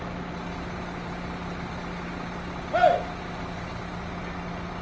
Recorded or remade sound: recorded